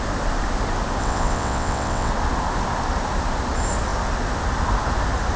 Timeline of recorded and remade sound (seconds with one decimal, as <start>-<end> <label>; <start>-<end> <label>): 0.0-1.0 recorded; 1.0-2.1 remade; 2.1-5.4 recorded